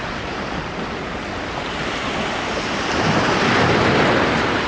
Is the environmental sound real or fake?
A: real